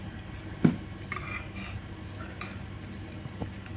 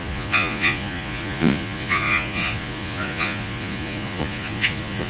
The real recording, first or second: first